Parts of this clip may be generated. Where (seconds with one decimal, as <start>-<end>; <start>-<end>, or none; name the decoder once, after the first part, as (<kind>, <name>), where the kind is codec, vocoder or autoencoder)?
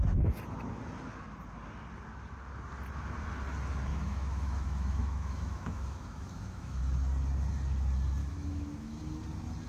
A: 3.9-6.8 (autoencoder, DAC-VAE); 8.2-9.0